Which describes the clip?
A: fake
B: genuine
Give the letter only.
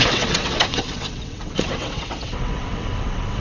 A